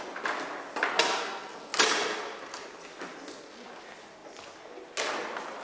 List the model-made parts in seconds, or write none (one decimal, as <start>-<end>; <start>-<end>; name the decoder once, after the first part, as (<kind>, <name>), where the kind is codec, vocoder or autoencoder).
none